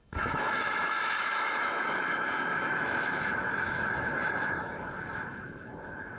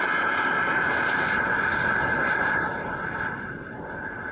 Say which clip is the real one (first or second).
second